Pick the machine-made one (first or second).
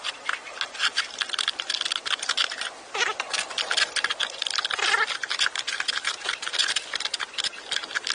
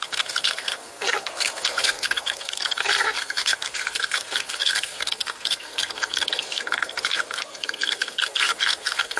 second